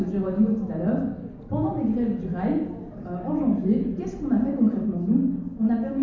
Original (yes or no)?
yes